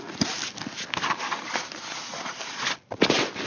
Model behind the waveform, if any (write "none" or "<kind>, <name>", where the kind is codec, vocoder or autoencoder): none